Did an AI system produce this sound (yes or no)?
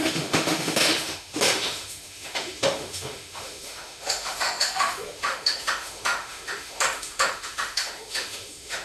yes